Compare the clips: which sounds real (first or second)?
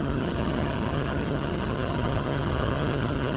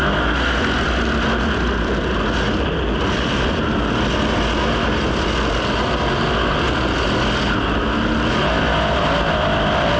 second